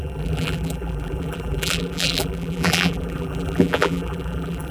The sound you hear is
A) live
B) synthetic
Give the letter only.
B